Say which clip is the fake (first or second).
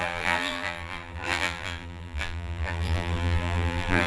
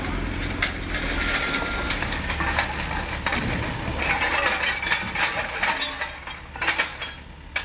first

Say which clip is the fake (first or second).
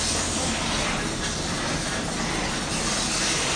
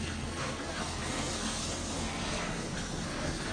second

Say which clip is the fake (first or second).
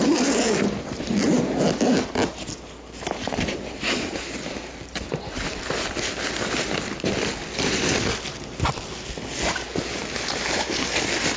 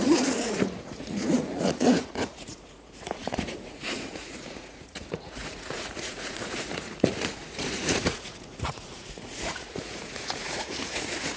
second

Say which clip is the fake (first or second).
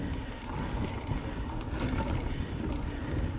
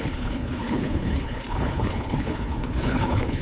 second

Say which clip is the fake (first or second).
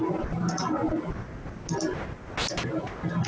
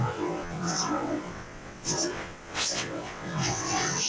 second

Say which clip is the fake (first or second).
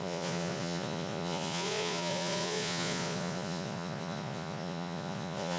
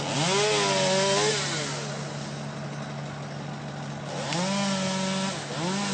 first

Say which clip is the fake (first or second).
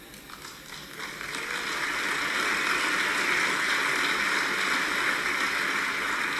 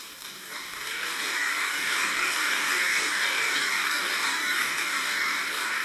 second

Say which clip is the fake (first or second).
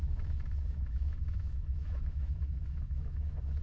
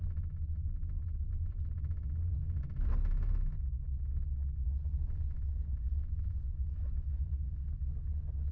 first